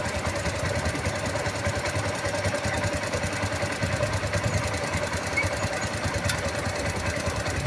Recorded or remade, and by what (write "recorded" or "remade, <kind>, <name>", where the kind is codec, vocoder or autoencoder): recorded